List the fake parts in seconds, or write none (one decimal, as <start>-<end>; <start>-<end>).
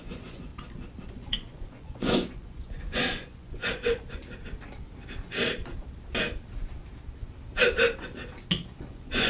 0.0-0.5; 1.1-4.2; 8.9-9.3